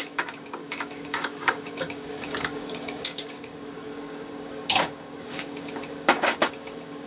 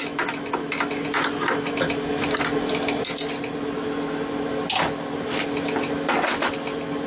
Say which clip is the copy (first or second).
first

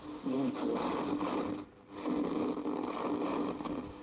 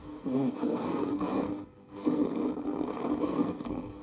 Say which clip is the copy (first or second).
second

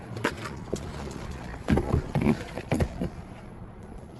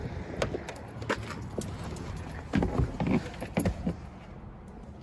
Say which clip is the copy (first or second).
first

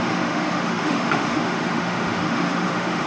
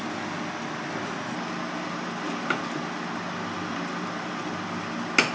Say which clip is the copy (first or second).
first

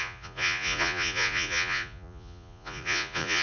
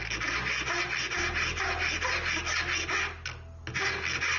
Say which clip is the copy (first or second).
first